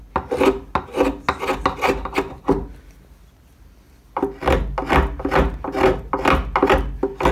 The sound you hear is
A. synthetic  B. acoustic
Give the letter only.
B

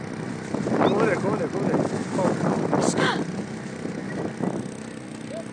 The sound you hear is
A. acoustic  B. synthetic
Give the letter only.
A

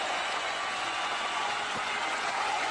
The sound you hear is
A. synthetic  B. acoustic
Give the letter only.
A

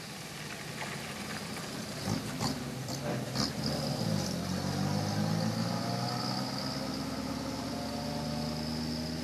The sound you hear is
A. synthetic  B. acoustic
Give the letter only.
B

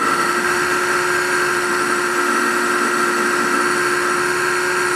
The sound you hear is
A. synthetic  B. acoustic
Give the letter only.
A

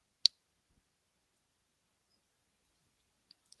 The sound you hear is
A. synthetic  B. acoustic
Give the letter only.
B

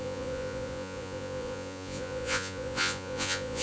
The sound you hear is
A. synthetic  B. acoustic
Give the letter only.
A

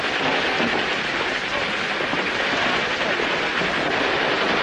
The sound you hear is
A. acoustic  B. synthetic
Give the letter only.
A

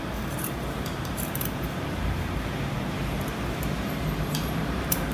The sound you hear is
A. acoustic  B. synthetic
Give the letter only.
B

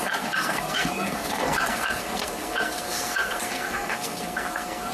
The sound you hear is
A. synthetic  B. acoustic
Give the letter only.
A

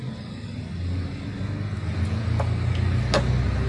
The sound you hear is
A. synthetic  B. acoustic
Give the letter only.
B